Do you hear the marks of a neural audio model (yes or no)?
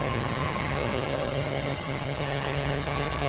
yes